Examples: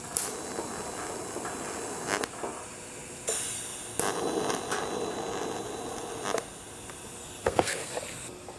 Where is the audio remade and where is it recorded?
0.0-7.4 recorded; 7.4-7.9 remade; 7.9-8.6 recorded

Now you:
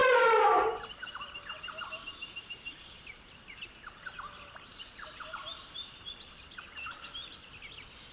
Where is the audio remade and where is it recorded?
0.0-8.1 remade

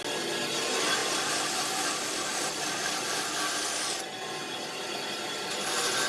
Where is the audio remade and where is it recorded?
0.0-1.0 recorded; 1.0-3.4 remade; 3.4-6.1 recorded

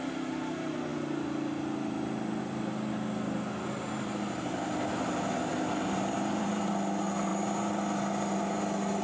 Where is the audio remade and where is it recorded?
0.0-5.5 recorded; 5.5-6.7 remade; 6.7-9.0 recorded

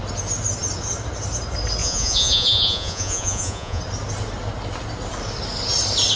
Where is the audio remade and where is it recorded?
0.0-1.8 recorded; 1.8-3.8 remade; 3.8-6.2 recorded